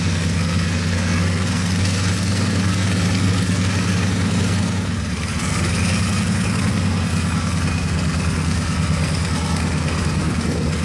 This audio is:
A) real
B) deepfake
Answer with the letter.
B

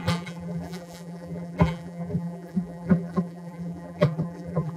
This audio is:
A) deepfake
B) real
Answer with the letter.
A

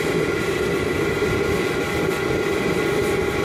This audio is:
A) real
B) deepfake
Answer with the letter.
A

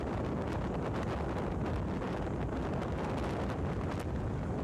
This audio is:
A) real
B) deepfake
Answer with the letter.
A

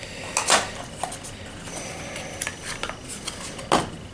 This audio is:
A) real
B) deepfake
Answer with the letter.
A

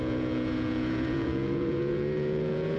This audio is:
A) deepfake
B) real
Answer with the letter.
A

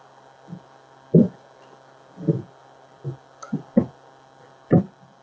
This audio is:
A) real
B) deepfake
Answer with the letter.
A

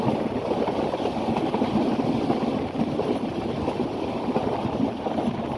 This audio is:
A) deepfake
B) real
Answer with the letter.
B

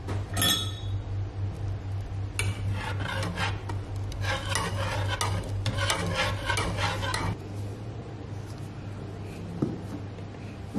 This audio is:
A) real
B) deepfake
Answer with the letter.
A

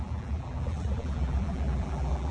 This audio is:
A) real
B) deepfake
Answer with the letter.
B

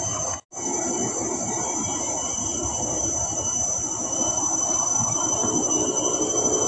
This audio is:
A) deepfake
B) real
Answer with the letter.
B